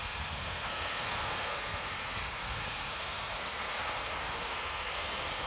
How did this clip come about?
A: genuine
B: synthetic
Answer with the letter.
B